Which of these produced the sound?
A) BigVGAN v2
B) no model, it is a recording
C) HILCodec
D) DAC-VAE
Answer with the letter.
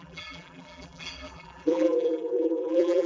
A